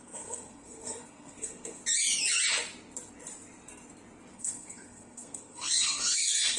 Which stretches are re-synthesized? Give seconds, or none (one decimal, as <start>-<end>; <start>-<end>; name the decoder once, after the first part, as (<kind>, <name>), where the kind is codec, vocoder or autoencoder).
0.0-1.8 (codec, SNAC); 4.3-6.6